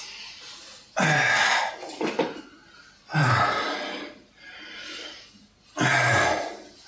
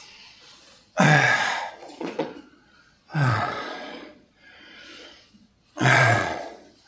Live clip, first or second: first